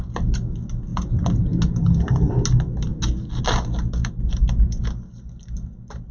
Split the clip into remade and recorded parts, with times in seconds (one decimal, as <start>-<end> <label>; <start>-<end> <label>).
0.0-0.9 recorded; 0.9-1.4 remade; 1.4-4.0 recorded; 4.0-4.8 remade; 4.8-6.1 recorded